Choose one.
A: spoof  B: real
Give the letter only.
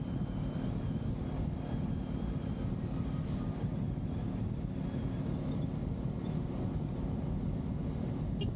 B